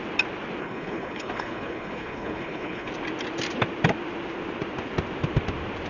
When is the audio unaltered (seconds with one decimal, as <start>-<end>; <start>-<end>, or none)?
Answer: 0.0-0.6; 2.9-5.9